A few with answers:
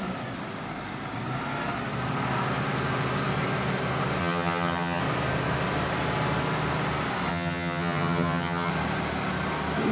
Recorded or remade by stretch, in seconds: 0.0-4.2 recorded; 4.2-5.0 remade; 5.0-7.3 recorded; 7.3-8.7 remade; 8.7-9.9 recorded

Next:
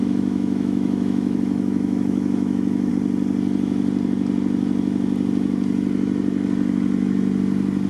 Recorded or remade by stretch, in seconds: 0.0-2.9 remade; 2.9-7.9 recorded

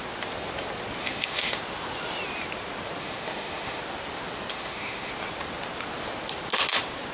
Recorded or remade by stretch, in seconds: 0.0-1.0 recorded; 1.0-1.6 remade; 1.6-3.0 recorded; 3.0-3.8 remade; 3.8-4.5 recorded; 4.5-5.1 remade; 5.1-7.1 recorded